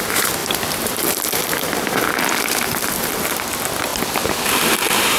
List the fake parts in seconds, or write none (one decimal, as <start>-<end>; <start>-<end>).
0.4-3.1